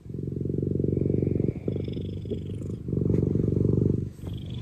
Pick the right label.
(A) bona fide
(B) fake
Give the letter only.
A